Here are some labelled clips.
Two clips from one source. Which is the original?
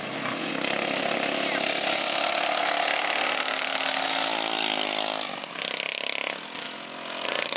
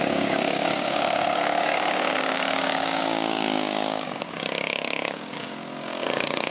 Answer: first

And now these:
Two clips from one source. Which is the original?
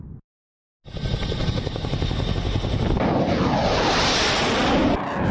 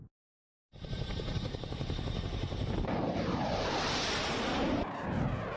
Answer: first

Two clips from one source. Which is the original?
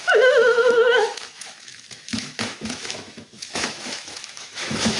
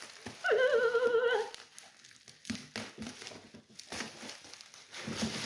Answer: second